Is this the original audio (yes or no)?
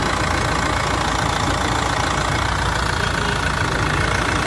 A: yes